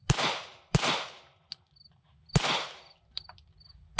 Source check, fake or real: real